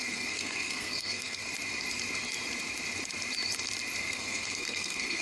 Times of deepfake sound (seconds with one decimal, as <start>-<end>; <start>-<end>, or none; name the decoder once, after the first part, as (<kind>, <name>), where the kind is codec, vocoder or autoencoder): 0.0-1.4 (codec, SNAC); 4.0-5.2